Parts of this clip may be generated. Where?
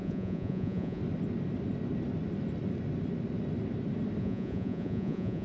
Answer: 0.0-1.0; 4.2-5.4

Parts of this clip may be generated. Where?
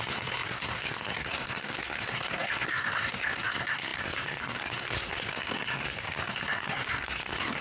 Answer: 0.0-7.6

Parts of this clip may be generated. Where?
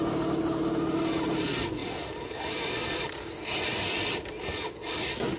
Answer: none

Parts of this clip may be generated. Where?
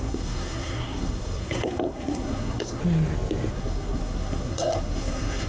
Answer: 0.0-2.8; 3.5-5.5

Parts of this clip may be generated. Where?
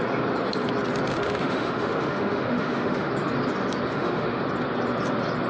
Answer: 1.1-3.1; 3.9-4.4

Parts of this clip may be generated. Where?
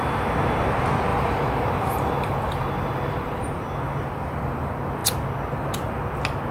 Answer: 1.1-3.5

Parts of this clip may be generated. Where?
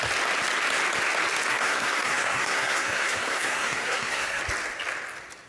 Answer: 1.5-4.4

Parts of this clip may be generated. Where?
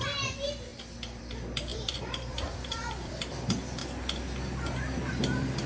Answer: 0.0-0.7; 1.2-3.8; 5.1-5.7